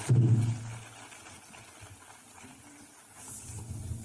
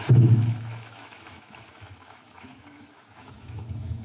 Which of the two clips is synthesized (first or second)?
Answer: second